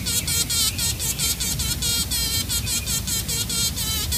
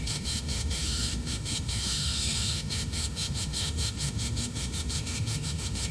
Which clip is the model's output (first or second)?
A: second